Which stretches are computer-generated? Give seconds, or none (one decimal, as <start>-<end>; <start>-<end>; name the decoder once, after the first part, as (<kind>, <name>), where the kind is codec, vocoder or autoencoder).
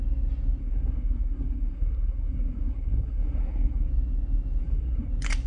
0.6-3.9 (codec, SNAC); 4.6-5.1